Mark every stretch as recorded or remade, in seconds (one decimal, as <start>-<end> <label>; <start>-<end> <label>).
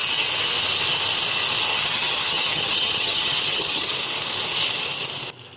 0.0-1.7 recorded; 1.7-3.9 remade; 3.9-5.6 recorded